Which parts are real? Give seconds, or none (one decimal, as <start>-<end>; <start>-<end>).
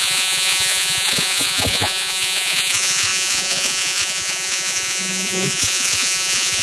none